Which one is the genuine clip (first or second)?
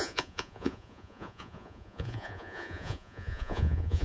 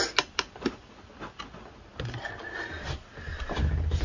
second